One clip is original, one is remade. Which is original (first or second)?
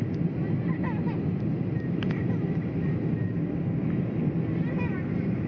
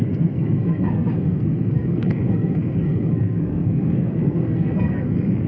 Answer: first